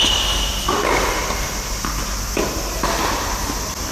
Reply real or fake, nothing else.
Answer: real